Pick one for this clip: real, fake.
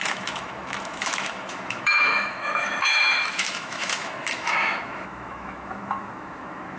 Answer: fake